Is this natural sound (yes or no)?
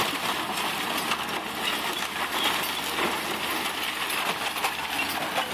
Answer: yes